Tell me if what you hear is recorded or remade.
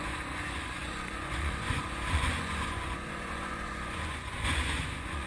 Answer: remade